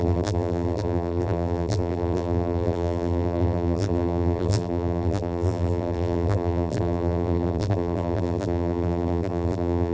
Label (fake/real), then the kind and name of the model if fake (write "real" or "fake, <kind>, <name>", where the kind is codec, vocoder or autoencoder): fake, vocoder, BigVGAN v2